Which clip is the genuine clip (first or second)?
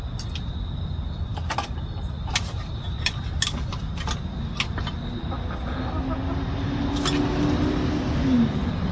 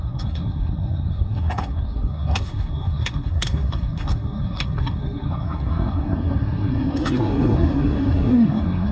first